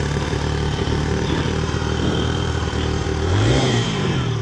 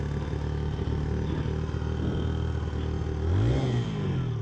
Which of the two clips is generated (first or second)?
first